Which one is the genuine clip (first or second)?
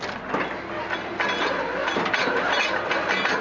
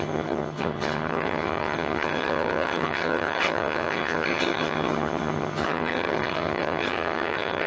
first